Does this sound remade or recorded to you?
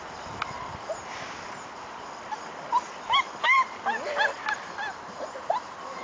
recorded